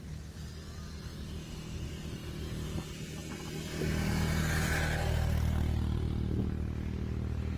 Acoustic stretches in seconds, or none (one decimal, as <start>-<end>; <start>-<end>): 0.0-7.6